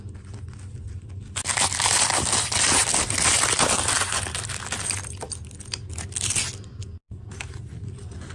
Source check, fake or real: real